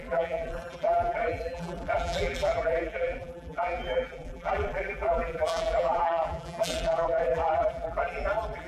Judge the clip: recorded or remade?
remade